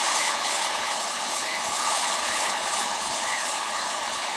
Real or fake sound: fake